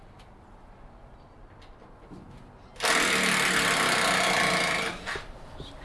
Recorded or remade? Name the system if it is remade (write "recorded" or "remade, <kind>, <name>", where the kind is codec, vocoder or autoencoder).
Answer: recorded